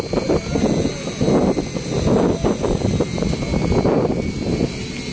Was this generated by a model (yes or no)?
no